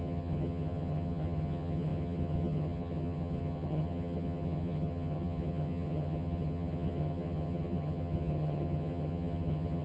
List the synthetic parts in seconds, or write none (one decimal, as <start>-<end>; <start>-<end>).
0.0-9.8